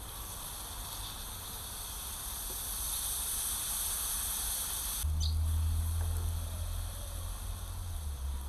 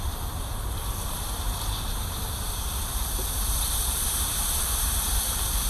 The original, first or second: first